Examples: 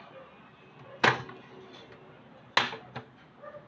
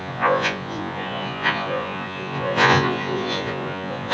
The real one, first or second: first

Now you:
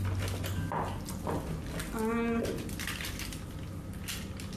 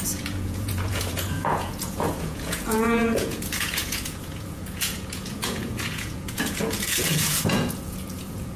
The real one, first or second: first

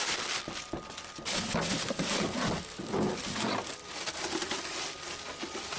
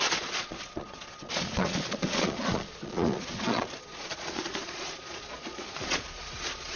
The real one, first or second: first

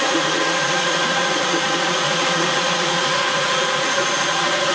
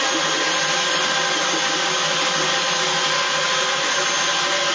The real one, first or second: second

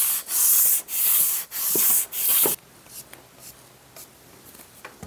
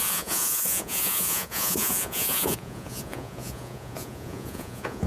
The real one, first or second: first